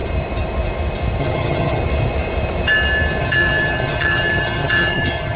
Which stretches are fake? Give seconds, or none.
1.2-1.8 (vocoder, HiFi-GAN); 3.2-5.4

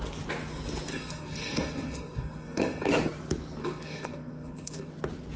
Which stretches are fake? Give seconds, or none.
0.9-2.9 (codec, SNAC); 3.6-4.9